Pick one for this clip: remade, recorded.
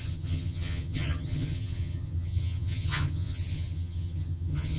remade